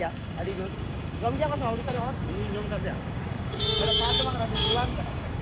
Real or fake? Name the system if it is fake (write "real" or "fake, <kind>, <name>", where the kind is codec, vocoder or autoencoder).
fake, codec, DAC